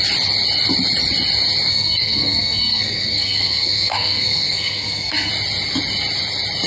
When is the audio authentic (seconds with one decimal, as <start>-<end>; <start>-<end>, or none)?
0.0-1.7; 5.3-6.7